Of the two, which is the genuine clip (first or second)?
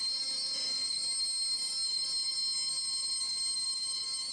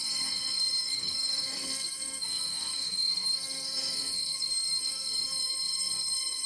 first